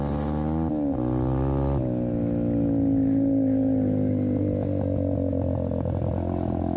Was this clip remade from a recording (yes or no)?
no